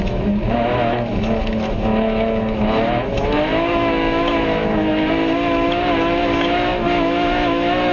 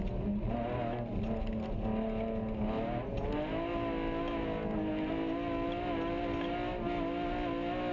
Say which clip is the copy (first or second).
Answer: first